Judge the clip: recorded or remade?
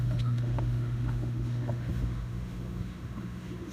remade